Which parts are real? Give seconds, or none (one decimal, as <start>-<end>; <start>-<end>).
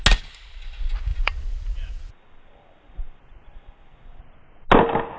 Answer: 0.0-1.1; 4.2-5.2